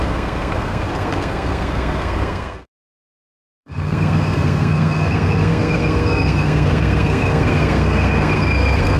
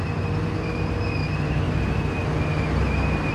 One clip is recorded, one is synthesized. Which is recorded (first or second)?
second